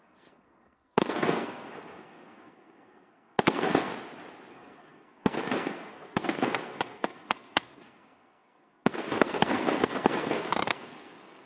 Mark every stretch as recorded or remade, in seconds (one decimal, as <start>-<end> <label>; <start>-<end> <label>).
0.0-3.9 remade; 3.9-4.5 recorded; 4.5-11.5 remade